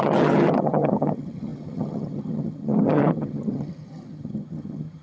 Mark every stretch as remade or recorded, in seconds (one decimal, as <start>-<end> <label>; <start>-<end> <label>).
0.0-5.0 remade